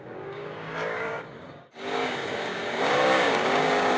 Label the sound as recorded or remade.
remade